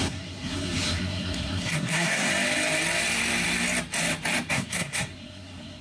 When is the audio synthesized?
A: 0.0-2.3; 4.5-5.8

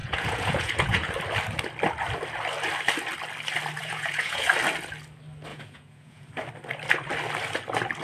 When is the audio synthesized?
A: 0.0-1.1; 3.8-4.5; 5.5-6.3

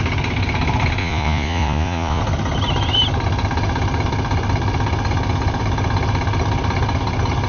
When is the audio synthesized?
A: 1.0-2.2

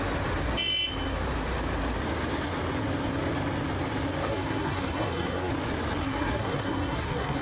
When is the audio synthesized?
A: 4.2-5.5; 6.0-7.4

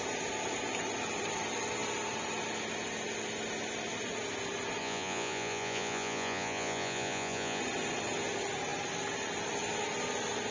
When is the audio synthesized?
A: 4.8-7.6

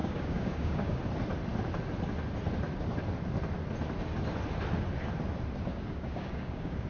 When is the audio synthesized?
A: 0.0-1.0; 5.7-6.9

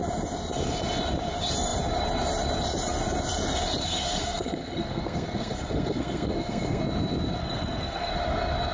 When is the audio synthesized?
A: 3.8-6.8; 7.4-8.1